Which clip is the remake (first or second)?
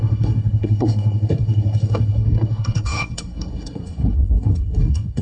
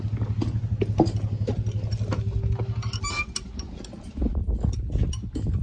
first